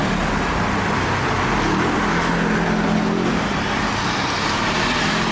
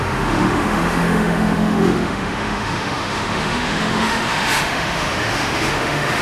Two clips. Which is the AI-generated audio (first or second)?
second